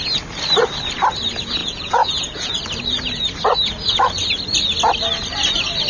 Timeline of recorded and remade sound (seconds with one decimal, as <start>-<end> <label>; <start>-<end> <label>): 0.0-1.6 recorded; 1.6-2.5 remade; 2.5-5.9 recorded